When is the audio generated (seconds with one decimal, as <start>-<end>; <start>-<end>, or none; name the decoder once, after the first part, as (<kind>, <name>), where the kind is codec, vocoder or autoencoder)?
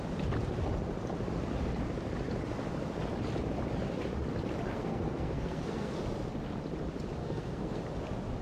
4.7-6.0 (codec, SNAC); 7.2-7.8